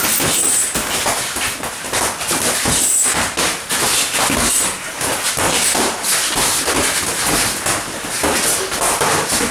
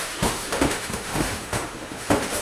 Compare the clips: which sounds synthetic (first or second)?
second